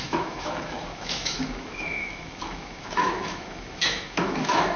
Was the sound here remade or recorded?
remade